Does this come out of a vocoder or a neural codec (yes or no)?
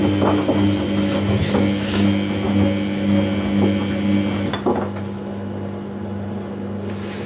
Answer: no